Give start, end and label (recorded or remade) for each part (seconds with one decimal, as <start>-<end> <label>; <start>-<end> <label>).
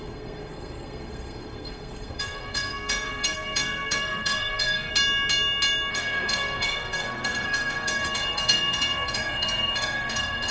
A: 0.0-4.9 remade; 4.9-5.9 recorded; 5.9-10.5 remade